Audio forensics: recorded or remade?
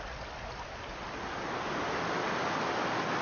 recorded